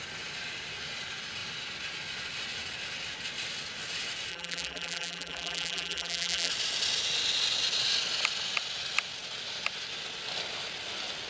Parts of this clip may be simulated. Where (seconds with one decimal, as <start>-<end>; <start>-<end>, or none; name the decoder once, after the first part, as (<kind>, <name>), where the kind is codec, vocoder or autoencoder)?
4.3-6.5 (vocoder, BigVGAN v2)

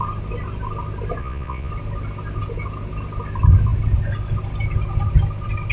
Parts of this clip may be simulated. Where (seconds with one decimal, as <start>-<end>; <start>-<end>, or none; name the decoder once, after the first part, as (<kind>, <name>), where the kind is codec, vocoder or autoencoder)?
1.2-1.7 (vocoder, Vocos)

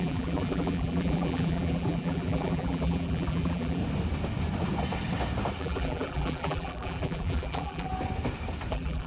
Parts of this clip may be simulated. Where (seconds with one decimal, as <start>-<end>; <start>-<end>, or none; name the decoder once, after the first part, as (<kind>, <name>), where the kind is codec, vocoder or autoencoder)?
0.0-3.8 (vocoder, BigVGAN v2); 5.6-7.9; 8.7-9.1

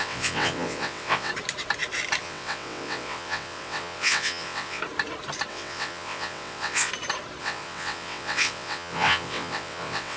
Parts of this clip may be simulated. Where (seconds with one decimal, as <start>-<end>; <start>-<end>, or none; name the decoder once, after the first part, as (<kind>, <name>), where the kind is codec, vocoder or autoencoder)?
0.0-1.3 (vocoder, WaveNeXt); 2.2-4.8; 5.5-6.9; 7.4-10.2

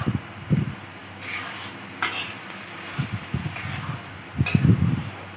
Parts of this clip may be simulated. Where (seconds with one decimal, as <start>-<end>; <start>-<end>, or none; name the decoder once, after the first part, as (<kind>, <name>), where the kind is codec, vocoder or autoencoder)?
none

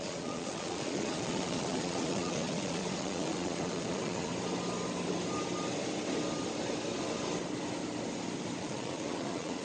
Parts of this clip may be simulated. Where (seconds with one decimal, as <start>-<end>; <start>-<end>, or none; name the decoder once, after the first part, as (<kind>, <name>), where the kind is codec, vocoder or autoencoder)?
0.0-4.3 (vocoder, Vocos); 8.6-9.6

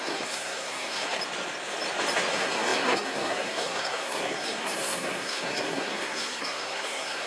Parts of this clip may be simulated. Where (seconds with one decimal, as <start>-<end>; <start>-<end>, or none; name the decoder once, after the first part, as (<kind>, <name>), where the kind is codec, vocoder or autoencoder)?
0.0-1.2 (codec, SNAC); 2.3-7.3